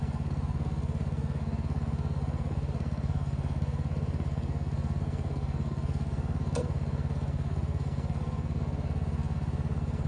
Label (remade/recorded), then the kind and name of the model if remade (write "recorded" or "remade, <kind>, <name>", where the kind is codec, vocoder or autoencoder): remade, codec, SNAC